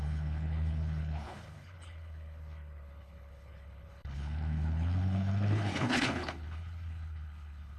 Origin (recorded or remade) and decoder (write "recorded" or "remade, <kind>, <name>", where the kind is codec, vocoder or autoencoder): remade, codec, HILCodec